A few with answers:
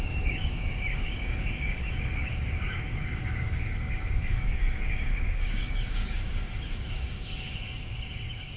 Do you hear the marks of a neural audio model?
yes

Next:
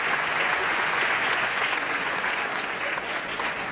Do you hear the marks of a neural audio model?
yes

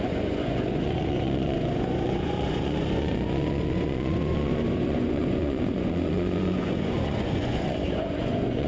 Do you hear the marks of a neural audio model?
yes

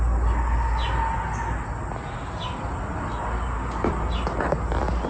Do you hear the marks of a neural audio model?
no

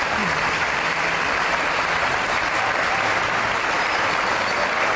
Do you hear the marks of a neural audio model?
no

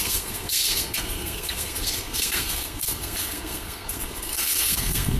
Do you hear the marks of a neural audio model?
yes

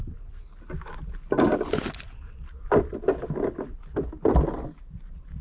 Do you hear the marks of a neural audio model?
no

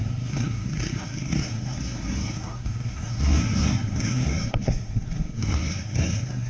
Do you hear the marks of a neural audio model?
yes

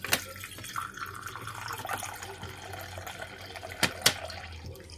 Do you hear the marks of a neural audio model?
no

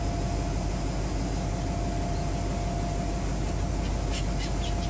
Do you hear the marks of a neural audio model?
no